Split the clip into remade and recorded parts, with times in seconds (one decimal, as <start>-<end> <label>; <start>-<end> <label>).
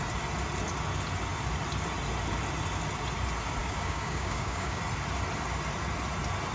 0.0-3.6 recorded; 3.6-4.8 remade; 4.8-6.5 recorded